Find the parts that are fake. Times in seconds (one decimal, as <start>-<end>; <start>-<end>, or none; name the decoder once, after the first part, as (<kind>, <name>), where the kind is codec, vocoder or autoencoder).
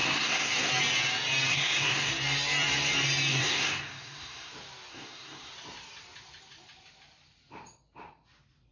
0.0-0.7 (codec, SNAC); 1.5-2.1; 3.3-4.5; 4.9-5.5